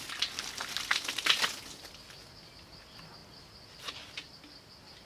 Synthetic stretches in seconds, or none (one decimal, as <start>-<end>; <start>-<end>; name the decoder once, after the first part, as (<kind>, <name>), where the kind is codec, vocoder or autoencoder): none